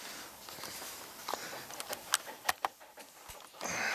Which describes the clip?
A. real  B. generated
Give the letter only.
A